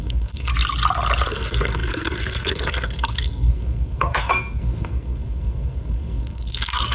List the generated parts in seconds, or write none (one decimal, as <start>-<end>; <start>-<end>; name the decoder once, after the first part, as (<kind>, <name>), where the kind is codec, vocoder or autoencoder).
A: 0.0-0.5 (codec, SNAC); 1.3-6.9

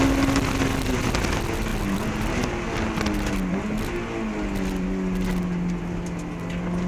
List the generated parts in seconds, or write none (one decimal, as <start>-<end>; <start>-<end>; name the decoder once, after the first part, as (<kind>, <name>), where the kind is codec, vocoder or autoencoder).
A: none

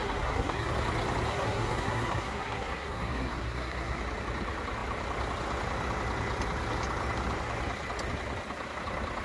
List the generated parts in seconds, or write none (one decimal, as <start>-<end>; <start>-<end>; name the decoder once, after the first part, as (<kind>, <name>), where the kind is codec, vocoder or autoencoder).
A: 0.0-0.7 (codec, SNAC); 1.3-4.0

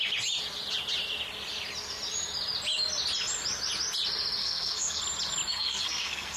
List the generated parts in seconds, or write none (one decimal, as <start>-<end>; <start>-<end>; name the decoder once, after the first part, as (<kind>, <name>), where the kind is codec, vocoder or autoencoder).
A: 4.4-5.0 (codec, SNAC); 5.5-6.4

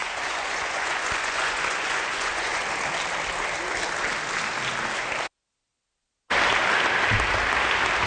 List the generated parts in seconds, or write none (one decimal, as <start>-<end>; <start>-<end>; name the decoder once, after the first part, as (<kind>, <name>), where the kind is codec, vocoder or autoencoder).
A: 0.0-2.6 (vocoder, Vocos)

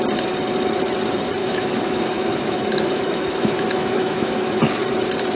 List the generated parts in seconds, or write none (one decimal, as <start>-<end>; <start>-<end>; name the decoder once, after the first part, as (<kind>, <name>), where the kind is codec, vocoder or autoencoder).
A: 1.4-4.6 (autoencoder, DAC-VAE)

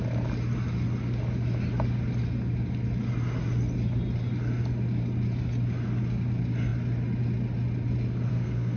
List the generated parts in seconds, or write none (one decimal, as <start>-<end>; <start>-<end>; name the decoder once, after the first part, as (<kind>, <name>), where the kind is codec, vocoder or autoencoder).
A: 8.3-8.8 (codec, SNAC)